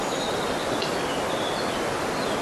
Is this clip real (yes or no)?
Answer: yes